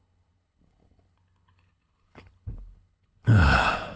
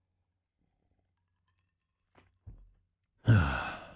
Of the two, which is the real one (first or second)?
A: second